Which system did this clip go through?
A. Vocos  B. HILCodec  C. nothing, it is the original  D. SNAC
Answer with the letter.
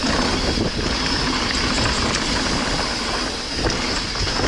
C